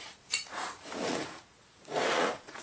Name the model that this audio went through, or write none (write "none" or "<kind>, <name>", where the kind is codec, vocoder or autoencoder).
vocoder, Vocos